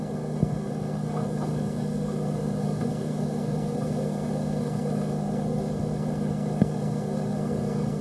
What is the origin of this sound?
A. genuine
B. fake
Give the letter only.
B